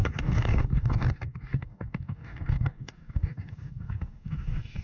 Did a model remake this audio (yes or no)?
yes